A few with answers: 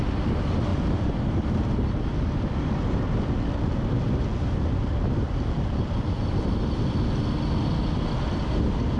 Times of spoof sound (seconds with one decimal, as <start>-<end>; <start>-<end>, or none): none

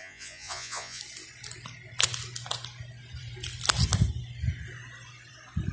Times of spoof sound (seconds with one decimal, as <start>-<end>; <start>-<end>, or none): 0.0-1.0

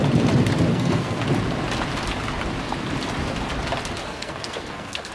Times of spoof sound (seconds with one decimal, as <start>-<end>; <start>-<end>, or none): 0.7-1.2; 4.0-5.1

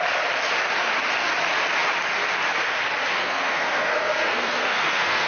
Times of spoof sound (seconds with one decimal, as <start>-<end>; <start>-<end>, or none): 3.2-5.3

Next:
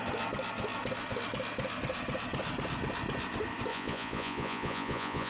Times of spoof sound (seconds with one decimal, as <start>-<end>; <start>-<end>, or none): 3.7-5.3